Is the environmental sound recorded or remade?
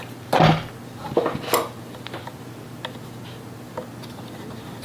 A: recorded